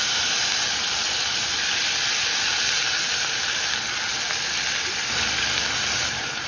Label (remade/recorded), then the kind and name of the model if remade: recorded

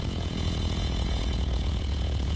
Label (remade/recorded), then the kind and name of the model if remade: remade, vocoder, Vocos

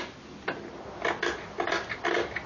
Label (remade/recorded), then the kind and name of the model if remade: recorded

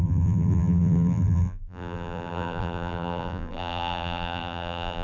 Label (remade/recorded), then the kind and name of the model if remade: remade, vocoder, BigVGAN v2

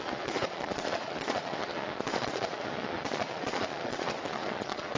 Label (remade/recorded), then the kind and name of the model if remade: remade, vocoder, Vocos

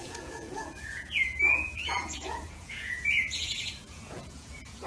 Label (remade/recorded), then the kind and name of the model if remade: remade, vocoder, Vocos